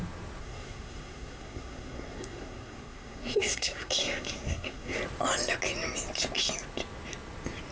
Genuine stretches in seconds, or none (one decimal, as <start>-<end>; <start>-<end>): 0.0-0.4; 5.0-7.7